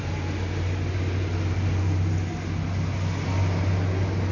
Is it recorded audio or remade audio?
recorded